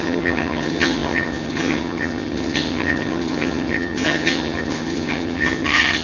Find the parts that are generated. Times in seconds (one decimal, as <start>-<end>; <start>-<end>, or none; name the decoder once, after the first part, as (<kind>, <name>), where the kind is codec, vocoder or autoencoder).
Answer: 0.0-6.0 (vocoder, HiFi-GAN)